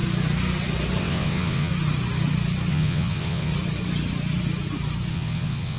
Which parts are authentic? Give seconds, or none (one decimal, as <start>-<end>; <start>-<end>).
0.0-1.0; 1.7-2.7; 3.5-5.1